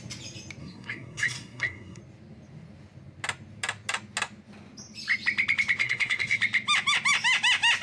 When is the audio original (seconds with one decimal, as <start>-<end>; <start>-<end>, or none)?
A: 0.0-0.6; 2.0-5.8; 6.4-7.8